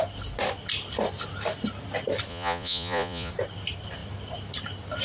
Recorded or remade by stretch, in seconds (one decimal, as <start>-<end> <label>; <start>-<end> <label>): 0.0-2.3 recorded; 2.3-3.3 remade; 3.3-5.0 recorded